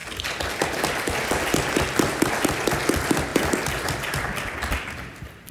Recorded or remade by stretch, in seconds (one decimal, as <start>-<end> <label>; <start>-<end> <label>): 0.0-3.3 recorded; 3.3-5.5 remade